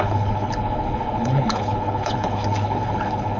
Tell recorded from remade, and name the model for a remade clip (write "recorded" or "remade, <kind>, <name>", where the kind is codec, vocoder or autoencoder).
remade, codec, HILCodec